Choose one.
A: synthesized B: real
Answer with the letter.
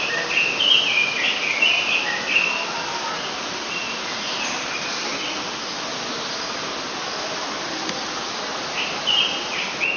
B